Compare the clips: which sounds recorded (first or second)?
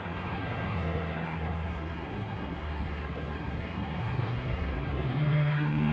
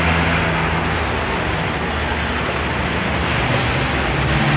second